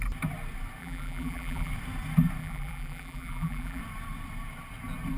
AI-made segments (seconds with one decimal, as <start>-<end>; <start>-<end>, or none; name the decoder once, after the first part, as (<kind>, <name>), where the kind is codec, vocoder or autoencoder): 0.8-1.7 (vocoder, BigVGAN v2); 2.4-3.8